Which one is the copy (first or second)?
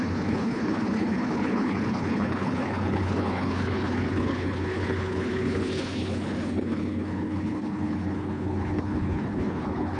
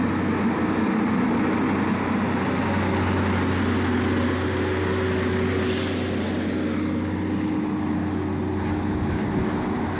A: first